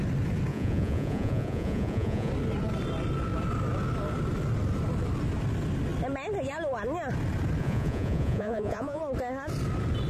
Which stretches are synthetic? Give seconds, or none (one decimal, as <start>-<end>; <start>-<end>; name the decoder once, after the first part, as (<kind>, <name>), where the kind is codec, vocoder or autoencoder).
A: 0.5-2.3 (vocoder, Vocos); 7.6-9.0